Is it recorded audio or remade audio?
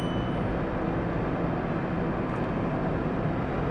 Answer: recorded